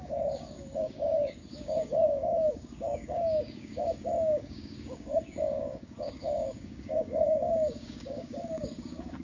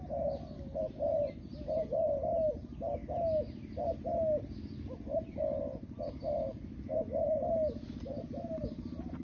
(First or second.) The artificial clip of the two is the first